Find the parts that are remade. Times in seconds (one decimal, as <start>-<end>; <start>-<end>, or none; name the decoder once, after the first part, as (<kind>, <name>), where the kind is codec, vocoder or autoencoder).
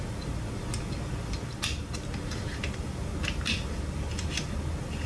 none